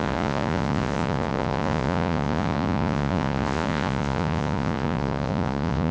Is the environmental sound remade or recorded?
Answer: remade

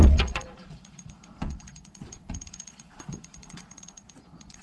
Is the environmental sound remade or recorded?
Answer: remade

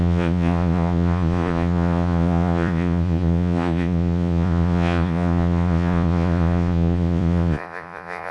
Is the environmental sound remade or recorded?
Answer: remade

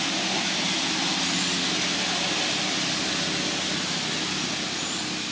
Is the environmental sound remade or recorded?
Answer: recorded